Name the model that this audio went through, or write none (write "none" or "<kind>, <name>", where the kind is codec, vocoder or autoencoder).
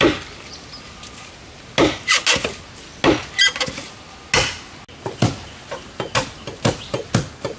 none